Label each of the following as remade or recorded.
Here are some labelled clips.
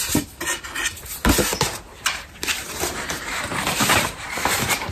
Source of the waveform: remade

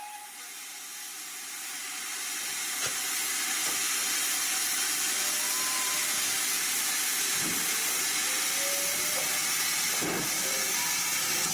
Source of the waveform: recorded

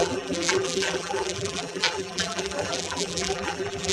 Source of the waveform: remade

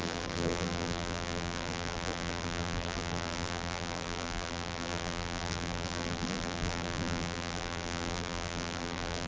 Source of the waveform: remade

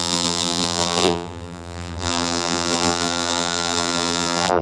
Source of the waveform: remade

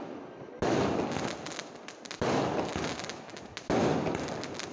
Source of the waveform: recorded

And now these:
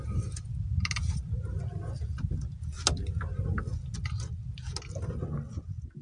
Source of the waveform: recorded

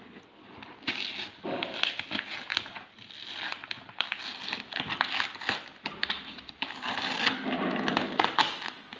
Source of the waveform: recorded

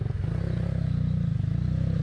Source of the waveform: recorded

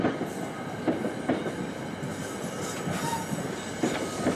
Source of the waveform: recorded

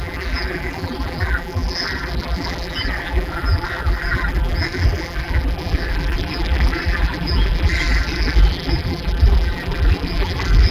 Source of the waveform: remade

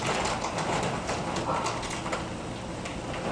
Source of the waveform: recorded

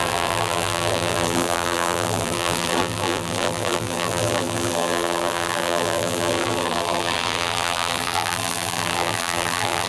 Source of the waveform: remade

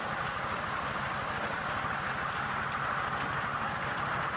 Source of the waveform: recorded